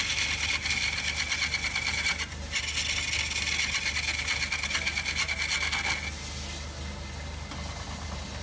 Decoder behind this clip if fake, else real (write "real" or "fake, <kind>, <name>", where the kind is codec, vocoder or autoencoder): real